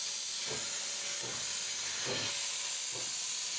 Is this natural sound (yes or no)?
yes